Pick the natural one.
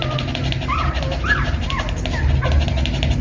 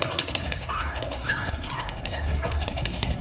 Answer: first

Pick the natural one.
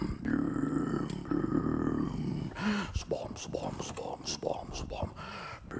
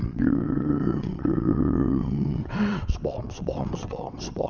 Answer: first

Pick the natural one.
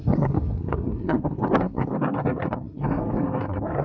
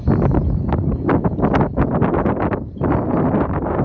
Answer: second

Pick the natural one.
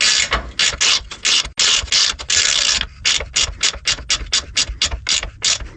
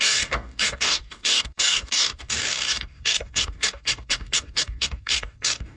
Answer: first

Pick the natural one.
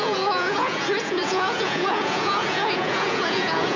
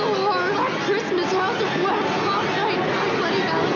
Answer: second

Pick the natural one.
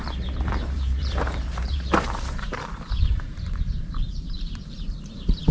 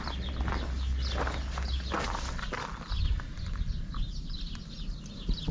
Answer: second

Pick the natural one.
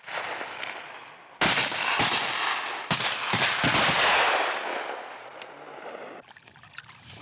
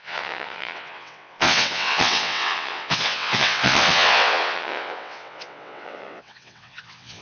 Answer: first